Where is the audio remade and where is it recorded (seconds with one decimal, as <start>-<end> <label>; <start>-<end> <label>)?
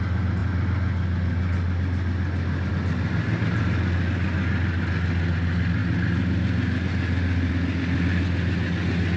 0.0-9.2 recorded